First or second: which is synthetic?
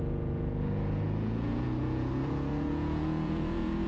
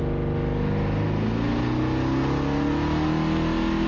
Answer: first